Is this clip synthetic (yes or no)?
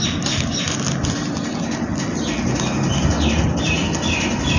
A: no